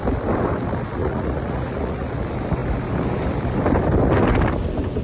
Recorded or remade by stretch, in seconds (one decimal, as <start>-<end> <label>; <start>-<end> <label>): 0.0-1.0 recorded; 1.0-2.1 remade; 2.1-5.0 recorded